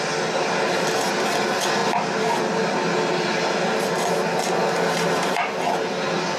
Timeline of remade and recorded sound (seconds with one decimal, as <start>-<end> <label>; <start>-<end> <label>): 0.0-6.4 recorded